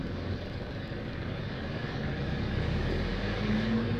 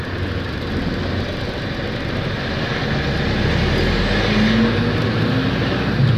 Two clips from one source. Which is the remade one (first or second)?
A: first